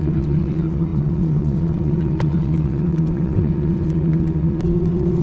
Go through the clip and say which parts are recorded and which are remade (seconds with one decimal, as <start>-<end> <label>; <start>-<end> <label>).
0.0-5.2 remade